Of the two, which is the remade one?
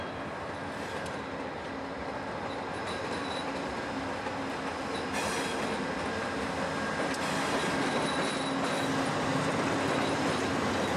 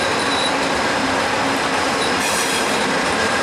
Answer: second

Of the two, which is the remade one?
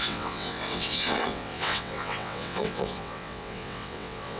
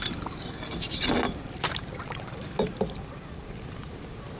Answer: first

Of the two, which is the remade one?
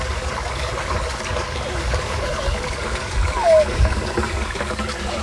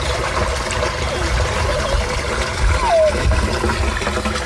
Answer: first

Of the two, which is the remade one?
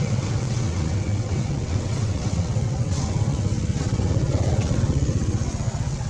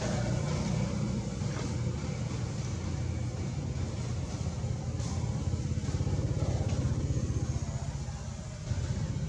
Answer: first